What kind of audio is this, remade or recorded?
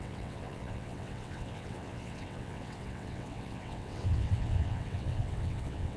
remade